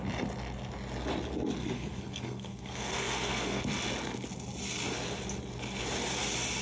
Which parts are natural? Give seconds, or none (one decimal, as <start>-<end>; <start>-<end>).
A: 0.0-1.6; 3.6-6.6